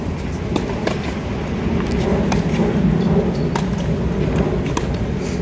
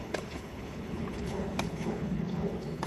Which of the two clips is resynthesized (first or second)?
second